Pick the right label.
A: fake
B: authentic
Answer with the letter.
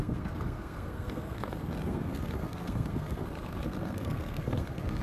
A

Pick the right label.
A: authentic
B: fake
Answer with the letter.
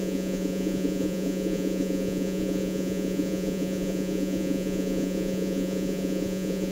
B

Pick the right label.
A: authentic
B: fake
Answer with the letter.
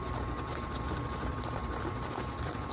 B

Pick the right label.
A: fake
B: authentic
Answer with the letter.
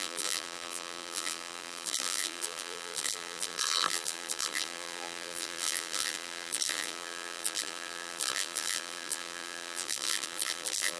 A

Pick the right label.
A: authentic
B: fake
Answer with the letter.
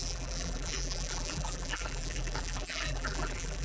B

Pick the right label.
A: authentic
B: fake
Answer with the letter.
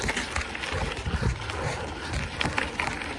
A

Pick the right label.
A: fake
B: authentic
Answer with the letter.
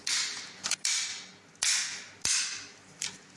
B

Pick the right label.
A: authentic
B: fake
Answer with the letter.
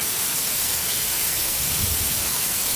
B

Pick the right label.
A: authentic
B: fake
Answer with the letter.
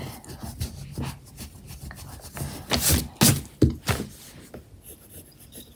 A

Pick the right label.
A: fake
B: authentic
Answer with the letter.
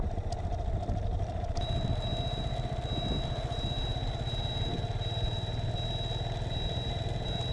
B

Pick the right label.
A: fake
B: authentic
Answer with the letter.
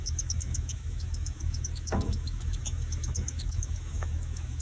A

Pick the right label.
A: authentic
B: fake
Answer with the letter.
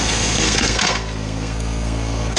B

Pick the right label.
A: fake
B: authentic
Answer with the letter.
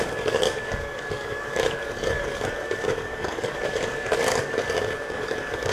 A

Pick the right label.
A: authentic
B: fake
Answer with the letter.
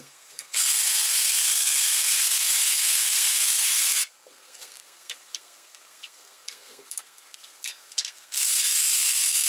B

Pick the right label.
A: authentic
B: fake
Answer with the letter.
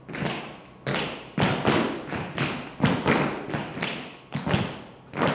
A